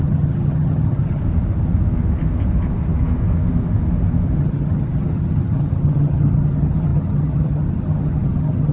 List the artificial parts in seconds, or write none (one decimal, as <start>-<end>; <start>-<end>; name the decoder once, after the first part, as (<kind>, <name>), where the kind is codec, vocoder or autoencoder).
0.0-1.2 (vocoder, HiFi-GAN); 4.4-8.7